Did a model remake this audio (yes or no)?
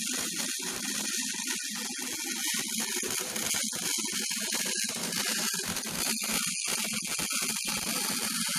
no